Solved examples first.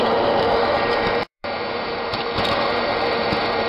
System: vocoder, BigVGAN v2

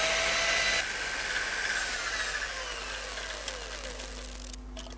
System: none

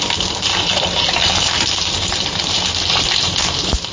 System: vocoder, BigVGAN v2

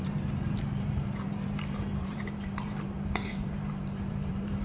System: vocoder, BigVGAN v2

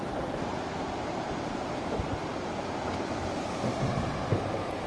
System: vocoder, BigVGAN v2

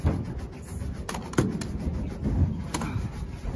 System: none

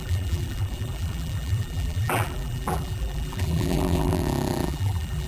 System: vocoder, BigVGAN v2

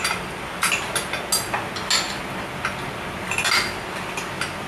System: none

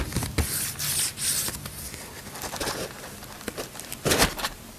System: none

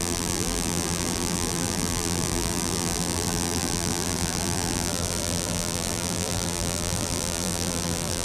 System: vocoder, BigVGAN v2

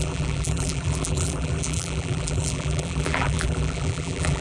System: vocoder, BigVGAN v2